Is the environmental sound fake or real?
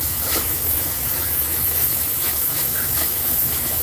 fake